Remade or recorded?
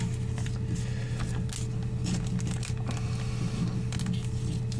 recorded